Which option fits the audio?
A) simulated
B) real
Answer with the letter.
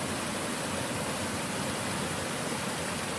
B